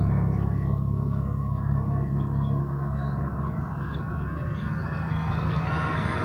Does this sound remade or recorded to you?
remade